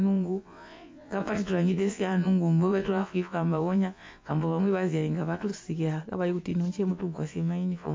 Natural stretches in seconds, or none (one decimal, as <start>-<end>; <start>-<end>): 5.5-6.9